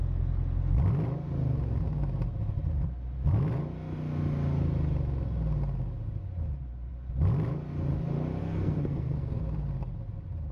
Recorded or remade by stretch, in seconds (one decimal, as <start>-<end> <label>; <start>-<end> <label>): 0.0-8.4 recorded; 8.4-9.4 remade; 9.4-10.5 recorded